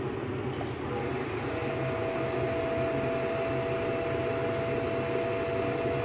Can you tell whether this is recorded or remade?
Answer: recorded